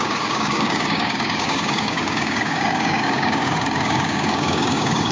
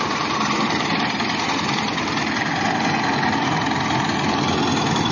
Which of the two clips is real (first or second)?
second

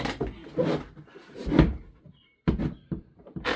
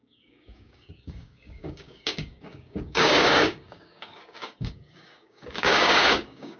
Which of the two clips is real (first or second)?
first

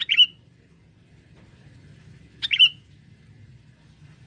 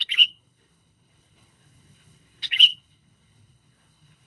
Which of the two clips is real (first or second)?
first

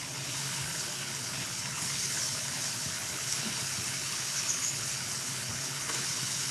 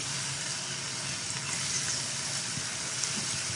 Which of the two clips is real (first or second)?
second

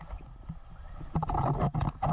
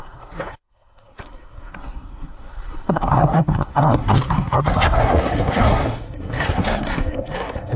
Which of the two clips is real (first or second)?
first